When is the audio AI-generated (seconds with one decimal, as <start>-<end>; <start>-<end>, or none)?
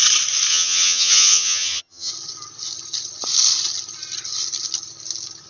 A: 0.5-2.1